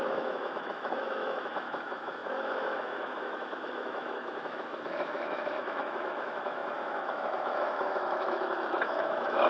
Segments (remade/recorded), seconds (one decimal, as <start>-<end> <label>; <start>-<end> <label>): 0.0-9.5 remade